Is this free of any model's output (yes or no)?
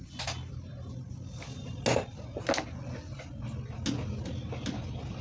yes